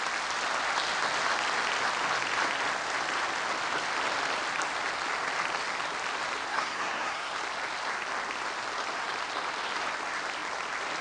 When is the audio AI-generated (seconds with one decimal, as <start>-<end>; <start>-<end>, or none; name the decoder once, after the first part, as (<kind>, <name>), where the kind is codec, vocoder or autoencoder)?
6.5-7.3 (codec, SNAC)